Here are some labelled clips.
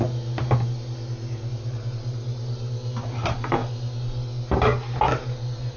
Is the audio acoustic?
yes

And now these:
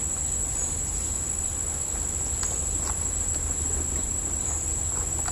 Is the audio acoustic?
yes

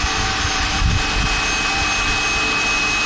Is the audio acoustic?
yes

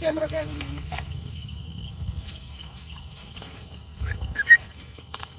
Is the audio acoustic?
no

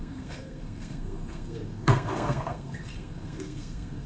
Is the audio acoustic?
no